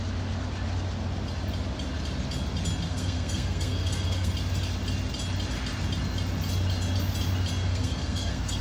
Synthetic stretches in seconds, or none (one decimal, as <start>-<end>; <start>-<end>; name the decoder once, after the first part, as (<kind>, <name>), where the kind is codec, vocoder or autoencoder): 2.9-4.3 (codec, SNAC); 7.7-8.6